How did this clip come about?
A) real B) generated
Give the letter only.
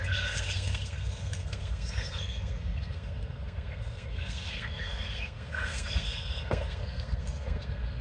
B